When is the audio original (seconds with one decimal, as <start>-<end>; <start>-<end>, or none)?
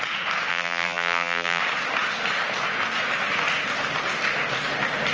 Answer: 0.0-0.5; 1.6-5.1